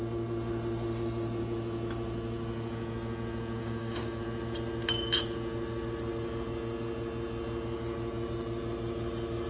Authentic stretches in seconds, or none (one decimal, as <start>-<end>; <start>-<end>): 0.0-3.6; 4.2-9.5